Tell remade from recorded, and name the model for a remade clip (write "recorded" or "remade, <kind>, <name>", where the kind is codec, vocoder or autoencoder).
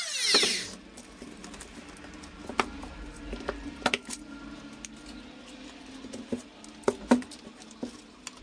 recorded